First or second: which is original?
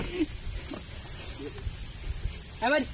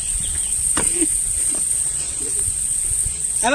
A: first